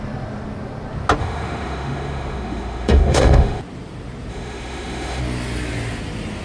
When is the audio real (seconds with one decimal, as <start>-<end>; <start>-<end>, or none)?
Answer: 0.0-1.2; 3.6-4.3; 5.2-6.4